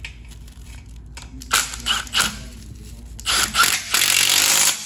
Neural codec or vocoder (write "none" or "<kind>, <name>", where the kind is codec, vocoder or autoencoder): none